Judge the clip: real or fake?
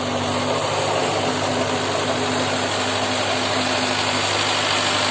real